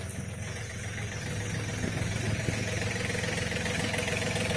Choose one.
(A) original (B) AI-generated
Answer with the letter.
A